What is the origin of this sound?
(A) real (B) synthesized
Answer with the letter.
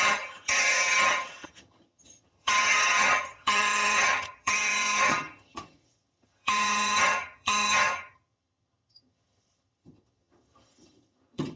B